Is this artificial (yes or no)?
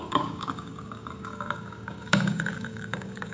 yes